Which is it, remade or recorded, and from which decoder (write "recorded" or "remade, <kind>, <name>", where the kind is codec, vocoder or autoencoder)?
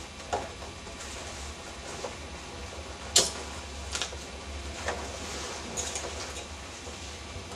recorded